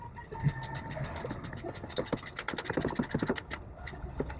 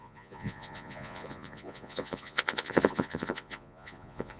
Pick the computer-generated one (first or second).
second